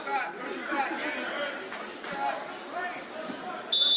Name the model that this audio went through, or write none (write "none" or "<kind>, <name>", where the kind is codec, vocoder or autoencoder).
none